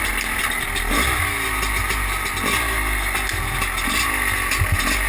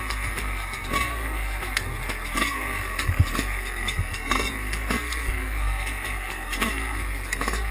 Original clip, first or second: first